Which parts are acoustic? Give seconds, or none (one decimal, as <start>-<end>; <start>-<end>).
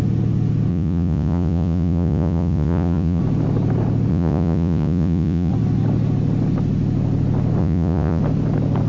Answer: 0.0-0.7; 3.2-4.1; 5.5-7.6; 8.2-8.9